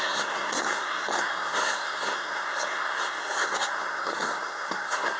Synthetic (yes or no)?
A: yes